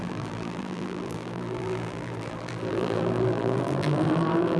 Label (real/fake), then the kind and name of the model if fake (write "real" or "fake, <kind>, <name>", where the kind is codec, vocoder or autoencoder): fake, vocoder, BigVGAN v2